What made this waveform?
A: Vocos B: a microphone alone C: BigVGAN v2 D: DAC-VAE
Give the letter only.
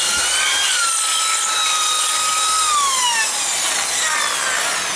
B